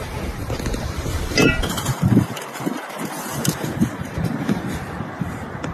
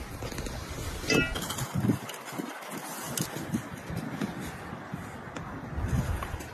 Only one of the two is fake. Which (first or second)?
first